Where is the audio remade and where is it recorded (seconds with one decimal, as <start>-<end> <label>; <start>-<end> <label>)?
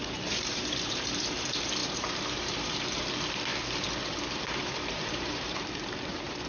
0.0-3.5 remade; 3.5-4.4 recorded; 4.4-6.5 remade